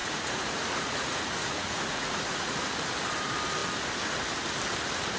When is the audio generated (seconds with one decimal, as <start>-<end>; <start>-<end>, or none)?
0.0-2.6